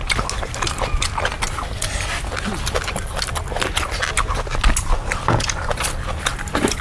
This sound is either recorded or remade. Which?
recorded